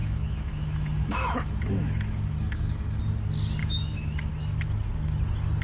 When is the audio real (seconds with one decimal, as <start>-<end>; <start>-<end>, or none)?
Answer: 3.0-3.6; 4.3-5.6